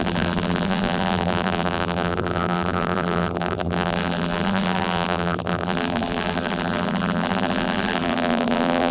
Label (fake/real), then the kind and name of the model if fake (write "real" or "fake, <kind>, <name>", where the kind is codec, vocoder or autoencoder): fake, vocoder, BigVGAN v2